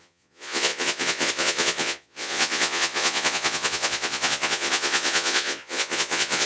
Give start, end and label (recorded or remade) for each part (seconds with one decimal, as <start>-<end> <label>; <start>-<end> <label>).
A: 0.0-6.5 remade